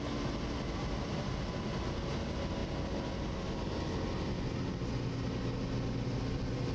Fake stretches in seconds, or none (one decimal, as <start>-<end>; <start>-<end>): none